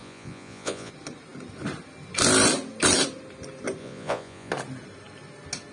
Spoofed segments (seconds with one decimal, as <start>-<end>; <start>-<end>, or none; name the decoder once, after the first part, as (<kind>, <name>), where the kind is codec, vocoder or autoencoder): 0.0-0.9 (vocoder, Vocos); 3.8-4.5